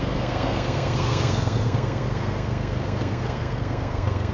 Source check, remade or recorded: remade